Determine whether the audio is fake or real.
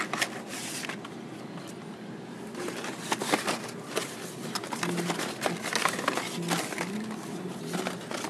real